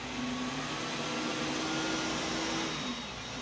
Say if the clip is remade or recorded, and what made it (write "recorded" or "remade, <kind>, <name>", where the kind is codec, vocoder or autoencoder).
recorded